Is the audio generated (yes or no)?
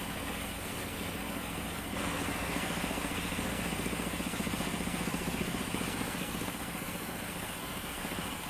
yes